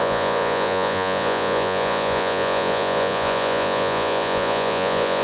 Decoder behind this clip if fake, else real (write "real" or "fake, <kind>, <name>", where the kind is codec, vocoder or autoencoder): fake, vocoder, Vocos